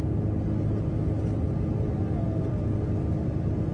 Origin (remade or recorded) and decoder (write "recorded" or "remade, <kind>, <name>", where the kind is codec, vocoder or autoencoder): recorded